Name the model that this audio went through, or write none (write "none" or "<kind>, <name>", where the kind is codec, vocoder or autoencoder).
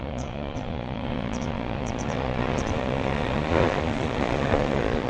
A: vocoder, Vocos